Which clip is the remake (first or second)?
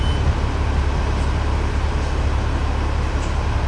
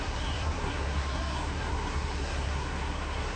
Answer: second